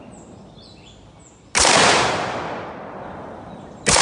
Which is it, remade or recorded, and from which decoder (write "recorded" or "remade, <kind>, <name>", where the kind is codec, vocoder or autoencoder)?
recorded